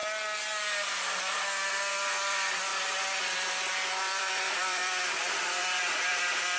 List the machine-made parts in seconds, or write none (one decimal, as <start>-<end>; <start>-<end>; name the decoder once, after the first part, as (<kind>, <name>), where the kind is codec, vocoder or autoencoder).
1.9-2.7 (vocoder, BigVGAN v2); 4.0-6.6